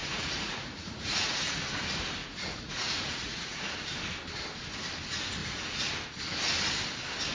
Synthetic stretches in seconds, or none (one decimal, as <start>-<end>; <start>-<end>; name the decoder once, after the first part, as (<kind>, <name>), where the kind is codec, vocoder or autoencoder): 0.0-1.6 (vocoder, Vocos); 2.2-3.6; 5.4-5.9